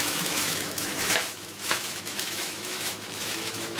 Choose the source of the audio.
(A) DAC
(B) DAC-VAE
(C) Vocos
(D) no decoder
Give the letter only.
B